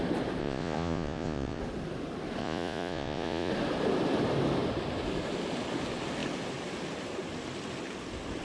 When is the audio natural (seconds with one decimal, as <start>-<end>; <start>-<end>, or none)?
0.0-0.4; 1.6-2.4; 3.5-8.4